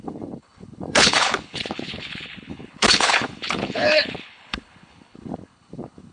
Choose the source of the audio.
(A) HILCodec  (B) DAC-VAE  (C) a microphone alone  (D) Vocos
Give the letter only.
A